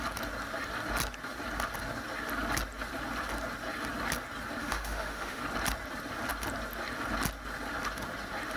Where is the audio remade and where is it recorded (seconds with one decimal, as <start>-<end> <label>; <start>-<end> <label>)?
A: 0.0-4.6 recorded; 4.6-5.4 remade; 5.4-8.6 recorded